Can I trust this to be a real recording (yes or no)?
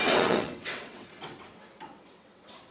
no